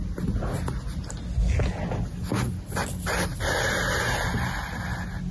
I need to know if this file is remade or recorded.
recorded